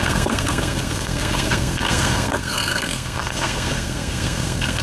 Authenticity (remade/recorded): remade